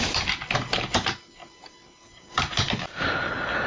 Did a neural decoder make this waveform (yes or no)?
yes